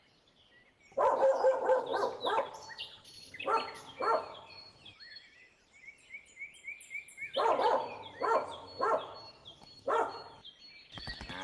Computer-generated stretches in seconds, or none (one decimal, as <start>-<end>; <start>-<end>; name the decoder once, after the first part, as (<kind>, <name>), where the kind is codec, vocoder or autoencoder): 2.8-5.7 (vocoder, BigVGAN v2)